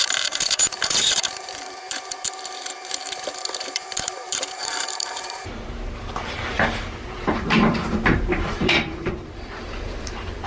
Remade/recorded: remade